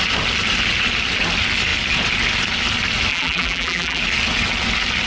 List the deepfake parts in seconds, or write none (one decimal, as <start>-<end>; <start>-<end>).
3.1-4.0